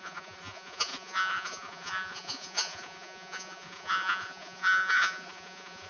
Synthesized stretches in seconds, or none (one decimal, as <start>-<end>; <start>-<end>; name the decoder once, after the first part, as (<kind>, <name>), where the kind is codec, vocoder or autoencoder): 0.0-5.9 (vocoder, Vocos)